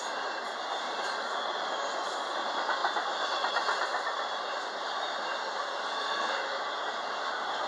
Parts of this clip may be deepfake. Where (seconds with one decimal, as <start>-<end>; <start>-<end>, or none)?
5.8-6.4